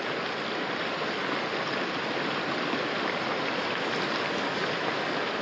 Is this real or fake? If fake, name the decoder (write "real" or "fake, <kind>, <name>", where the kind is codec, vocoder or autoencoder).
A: real